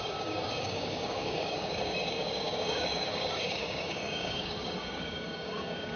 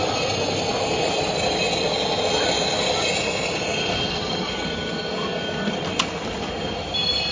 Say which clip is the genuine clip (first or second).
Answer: second